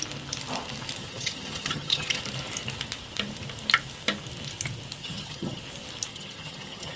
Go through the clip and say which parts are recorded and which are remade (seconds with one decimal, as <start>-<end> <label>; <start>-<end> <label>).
0.0-1.0 recorded; 1.0-2.2 remade; 2.2-5.0 recorded; 5.0-5.6 remade; 5.6-6.1 recorded; 6.1-7.0 remade